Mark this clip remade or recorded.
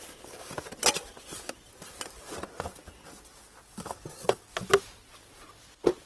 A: recorded